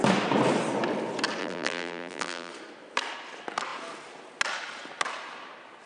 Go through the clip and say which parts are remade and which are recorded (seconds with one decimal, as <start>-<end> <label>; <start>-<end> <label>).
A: 0.0-1.4 recorded; 1.4-2.5 remade; 2.5-5.9 recorded